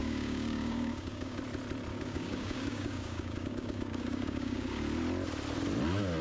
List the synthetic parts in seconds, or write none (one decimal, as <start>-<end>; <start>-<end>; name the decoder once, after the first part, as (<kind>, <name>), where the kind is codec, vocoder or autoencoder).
0.0-1.4 (codec, DAC); 1.9-4.8